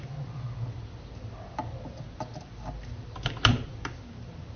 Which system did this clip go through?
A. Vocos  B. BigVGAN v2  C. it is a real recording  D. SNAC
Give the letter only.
B